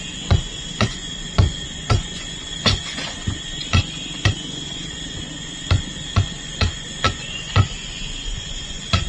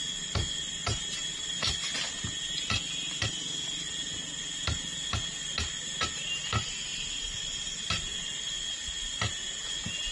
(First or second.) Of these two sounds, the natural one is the second